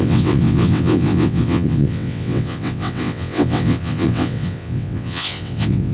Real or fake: fake